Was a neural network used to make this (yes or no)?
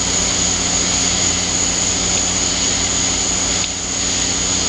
no